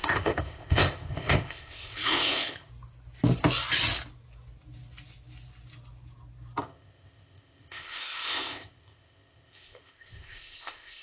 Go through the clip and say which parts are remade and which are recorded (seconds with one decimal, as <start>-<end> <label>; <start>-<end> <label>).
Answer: 0.0-2.7 remade; 2.7-6.6 recorded; 6.6-11.0 remade